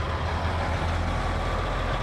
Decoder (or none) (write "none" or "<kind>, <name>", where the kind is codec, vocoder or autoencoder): none